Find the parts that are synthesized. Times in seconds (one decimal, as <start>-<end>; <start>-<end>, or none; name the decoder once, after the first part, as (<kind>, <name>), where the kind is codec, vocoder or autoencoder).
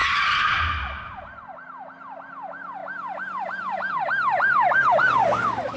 0.0-0.6 (vocoder, Vocos)